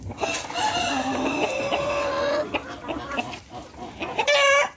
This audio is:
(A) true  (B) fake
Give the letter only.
A